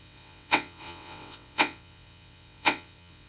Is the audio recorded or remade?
remade